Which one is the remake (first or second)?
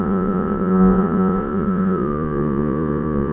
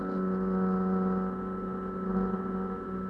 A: first